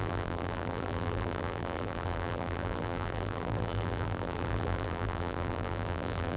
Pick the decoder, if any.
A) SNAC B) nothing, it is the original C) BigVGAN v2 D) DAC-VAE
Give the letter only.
C